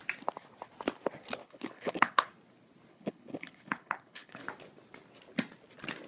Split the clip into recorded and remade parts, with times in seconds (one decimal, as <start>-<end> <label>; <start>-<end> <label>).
0.0-1.4 recorded; 1.4-2.3 remade; 2.3-2.9 recorded; 2.9-4.4 remade; 4.4-6.1 recorded